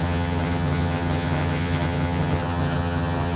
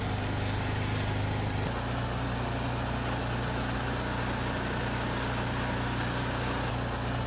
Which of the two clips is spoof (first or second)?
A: first